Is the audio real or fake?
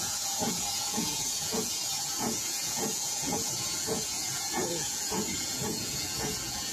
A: fake